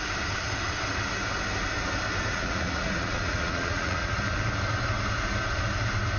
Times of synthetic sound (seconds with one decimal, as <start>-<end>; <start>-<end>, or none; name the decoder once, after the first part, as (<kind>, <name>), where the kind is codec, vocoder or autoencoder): 2.3-4.2 (vocoder, Vocos)